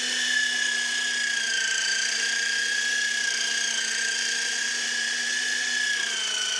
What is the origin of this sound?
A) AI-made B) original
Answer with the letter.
A